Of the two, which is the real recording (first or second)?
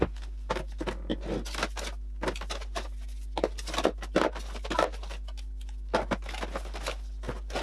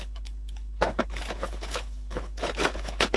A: first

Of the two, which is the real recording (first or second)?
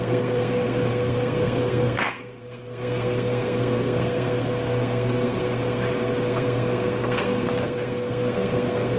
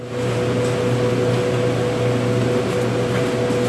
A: second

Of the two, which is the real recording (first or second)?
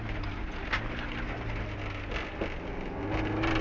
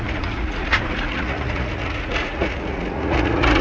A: first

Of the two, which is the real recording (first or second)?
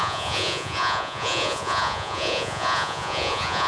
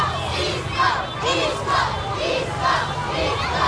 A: second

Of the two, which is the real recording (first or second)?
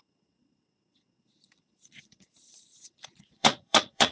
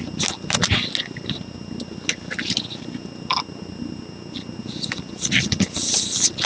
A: second